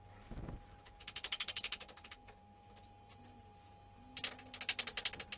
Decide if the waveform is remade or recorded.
recorded